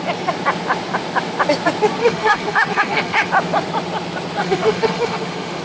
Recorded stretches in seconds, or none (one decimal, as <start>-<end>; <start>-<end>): 0.0-2.0; 3.3-4.4